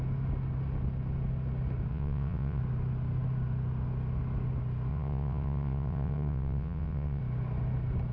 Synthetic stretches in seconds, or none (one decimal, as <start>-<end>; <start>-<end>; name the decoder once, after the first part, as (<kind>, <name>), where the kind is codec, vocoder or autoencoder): 1.9-2.6 (vocoder, WaveNeXt); 4.9-7.2